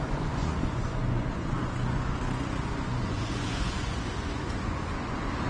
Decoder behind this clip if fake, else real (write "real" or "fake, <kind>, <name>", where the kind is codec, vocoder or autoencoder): fake, vocoder, Vocos